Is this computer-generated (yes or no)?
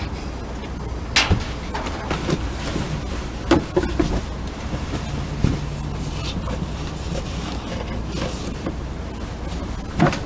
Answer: no